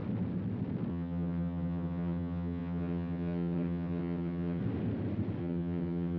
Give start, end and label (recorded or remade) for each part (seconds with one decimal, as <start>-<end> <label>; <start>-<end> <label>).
0.0-0.9 recorded; 0.9-4.6 remade; 4.6-5.4 recorded; 5.4-6.2 remade